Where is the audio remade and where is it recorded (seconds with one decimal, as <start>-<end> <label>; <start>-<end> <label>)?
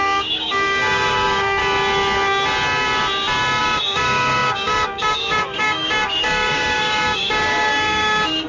0.0-1.6 remade; 1.6-3.6 recorded; 3.6-8.5 remade